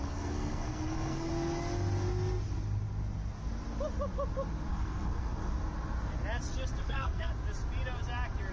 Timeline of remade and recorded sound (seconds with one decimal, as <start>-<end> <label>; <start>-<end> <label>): 0.0-1.3 remade; 1.3-4.7 recorded; 4.7-5.5 remade; 5.5-6.8 recorded; 6.8-7.3 remade; 7.3-8.5 recorded